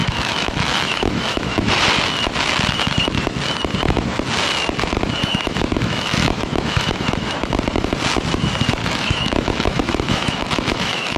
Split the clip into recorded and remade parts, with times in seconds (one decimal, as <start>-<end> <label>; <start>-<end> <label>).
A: 0.0-1.7 remade; 1.7-5.2 recorded; 5.2-7.5 remade; 7.5-8.8 recorded; 8.8-11.2 remade